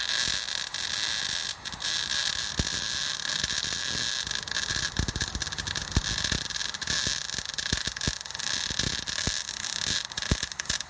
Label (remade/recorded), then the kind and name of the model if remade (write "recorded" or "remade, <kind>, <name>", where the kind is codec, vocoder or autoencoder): recorded